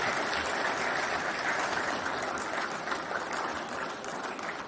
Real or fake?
real